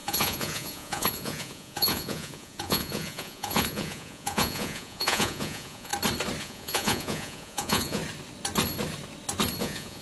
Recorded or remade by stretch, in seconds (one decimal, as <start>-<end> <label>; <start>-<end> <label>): 0.0-5.9 remade; 5.9-6.4 recorded; 6.4-8.0 remade; 8.0-9.6 recorded; 9.6-10.0 remade